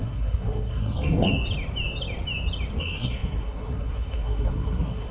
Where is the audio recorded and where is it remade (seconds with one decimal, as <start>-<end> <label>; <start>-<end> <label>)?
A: 0.0-1.3 remade; 1.3-2.8 recorded; 2.8-5.1 remade